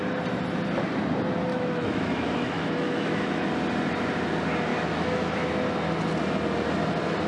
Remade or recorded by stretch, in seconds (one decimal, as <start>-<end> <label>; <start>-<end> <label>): 0.0-1.5 recorded; 1.5-3.5 remade; 3.5-4.7 recorded; 4.7-5.6 remade; 5.6-7.3 recorded